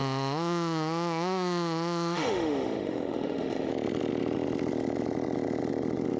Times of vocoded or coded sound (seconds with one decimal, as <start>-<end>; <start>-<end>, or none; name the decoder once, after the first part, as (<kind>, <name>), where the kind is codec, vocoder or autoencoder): 0.0-3.7 (autoencoder, DAC-VAE)